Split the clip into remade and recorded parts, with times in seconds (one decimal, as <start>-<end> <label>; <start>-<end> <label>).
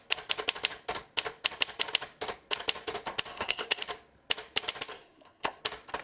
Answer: 0.0-3.3 recorded; 3.3-3.8 remade; 3.8-4.9 recorded; 4.9-5.6 remade; 5.6-6.0 recorded